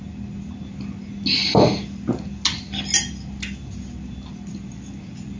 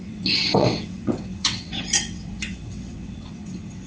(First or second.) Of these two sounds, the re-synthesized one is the second